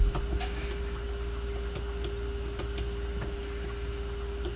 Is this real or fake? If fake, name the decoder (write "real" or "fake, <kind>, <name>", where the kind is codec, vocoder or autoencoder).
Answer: real